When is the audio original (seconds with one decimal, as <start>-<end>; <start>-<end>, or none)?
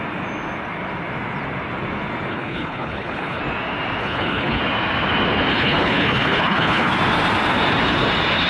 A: 0.0-2.3; 3.4-4.0; 4.6-5.5; 6.9-8.5